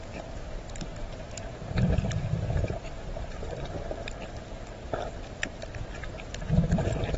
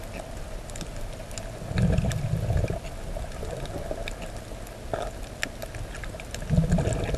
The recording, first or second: second